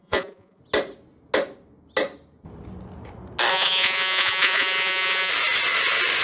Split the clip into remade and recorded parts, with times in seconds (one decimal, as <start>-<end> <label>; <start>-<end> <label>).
0.0-0.6 remade; 0.6-3.5 recorded; 3.5-5.3 remade; 5.3-6.2 recorded